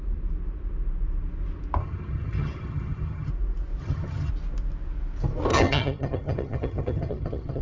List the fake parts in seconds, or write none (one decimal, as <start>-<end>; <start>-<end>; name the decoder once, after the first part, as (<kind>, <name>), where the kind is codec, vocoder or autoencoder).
1.8-3.3 (vocoder, HiFi-GAN); 3.8-4.3; 5.5-7.6